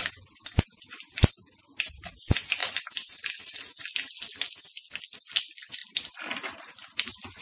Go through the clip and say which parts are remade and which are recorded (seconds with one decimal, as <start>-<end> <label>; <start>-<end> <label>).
0.0-7.4 recorded